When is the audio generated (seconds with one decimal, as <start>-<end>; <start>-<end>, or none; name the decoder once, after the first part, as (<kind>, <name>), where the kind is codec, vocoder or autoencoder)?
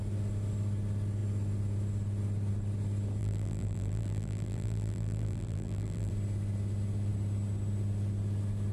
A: 3.2-6.1 (vocoder, BigVGAN v2)